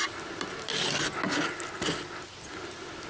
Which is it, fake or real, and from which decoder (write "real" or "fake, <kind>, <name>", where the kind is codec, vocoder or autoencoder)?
real